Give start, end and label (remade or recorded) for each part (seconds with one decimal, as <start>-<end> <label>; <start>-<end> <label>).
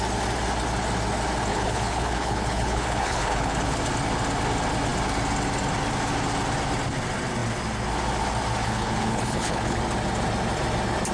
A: 0.0-1.5 recorded; 1.5-3.8 remade; 3.8-8.6 recorded; 8.6-9.8 remade; 9.8-11.1 recorded